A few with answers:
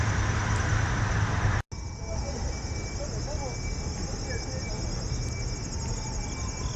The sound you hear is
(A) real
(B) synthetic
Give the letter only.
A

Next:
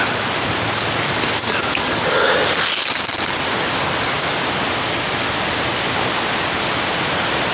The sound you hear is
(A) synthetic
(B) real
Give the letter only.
B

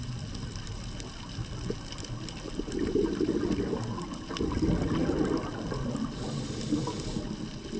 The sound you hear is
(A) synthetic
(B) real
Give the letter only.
B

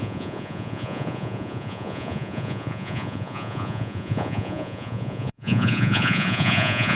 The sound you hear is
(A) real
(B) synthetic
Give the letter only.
B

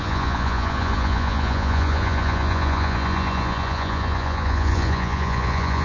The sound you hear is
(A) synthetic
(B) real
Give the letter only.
A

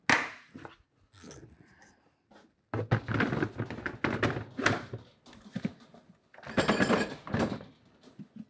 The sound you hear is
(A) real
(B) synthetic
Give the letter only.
A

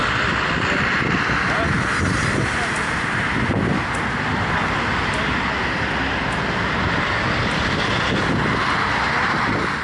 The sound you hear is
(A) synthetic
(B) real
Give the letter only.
B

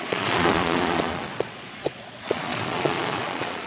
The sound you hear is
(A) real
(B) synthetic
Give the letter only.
B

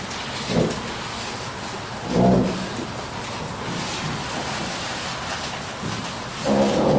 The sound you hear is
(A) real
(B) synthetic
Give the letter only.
A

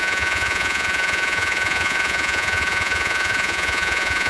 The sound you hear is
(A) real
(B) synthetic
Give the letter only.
B